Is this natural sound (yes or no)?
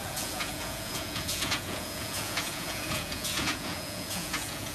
no